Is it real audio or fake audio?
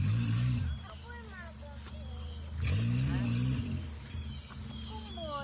real